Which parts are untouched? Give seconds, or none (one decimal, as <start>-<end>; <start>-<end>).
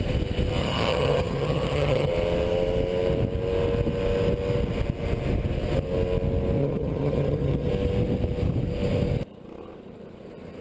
0.0-0.6; 2.1-6.6; 7.7-10.6